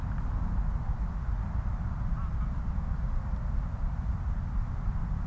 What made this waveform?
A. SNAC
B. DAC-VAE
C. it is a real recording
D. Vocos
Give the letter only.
C